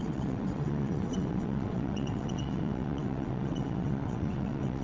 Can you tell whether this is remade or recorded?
remade